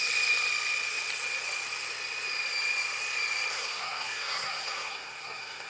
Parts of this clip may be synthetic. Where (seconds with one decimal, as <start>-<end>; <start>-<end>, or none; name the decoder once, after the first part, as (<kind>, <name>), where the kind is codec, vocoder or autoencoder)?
3.5-5.7 (codec, SNAC)